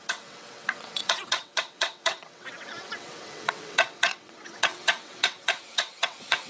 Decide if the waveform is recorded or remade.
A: remade